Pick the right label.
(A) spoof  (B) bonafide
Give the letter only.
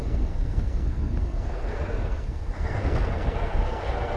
A